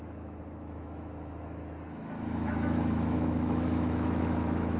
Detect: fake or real fake